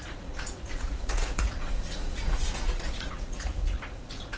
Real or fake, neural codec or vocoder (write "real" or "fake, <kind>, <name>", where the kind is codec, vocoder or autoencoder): fake, vocoder, Vocos